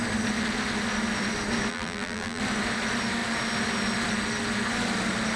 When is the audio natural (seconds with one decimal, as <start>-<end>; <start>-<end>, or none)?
0.0-1.7; 2.4-5.4